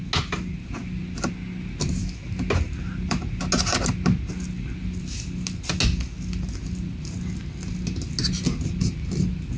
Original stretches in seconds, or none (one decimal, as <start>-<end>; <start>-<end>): 0.0-9.6